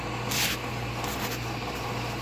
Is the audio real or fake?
real